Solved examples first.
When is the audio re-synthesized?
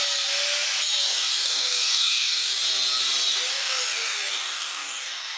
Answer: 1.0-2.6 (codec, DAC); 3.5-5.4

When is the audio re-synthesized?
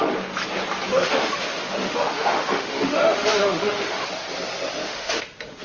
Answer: 0.9-4.1 (autoencoder, DAC-VAE); 4.8-5.6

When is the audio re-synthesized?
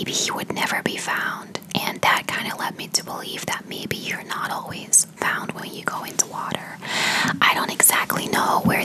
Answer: none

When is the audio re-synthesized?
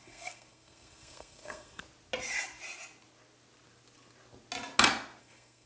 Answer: 0.0-1.8 (codec, SNAC); 5.2-5.7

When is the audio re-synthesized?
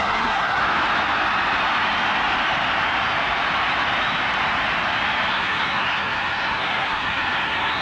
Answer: 0.0-0.6 (codec, SNAC); 5.3-7.8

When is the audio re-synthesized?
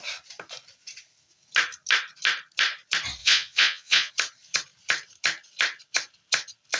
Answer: 3.2-4.1 (vocoder, Vocos)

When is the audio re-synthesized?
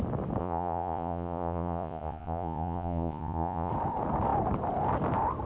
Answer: 0.4-3.7 (vocoder, Vocos)